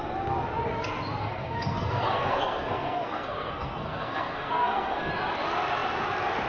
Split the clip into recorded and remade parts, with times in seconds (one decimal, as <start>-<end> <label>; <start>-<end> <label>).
0.0-1.2 recorded; 1.2-5.1 remade; 5.1-6.5 recorded